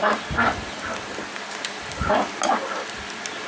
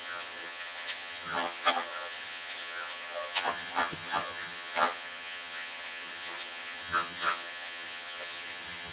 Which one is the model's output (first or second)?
second